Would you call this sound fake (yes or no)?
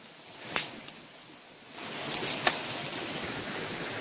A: no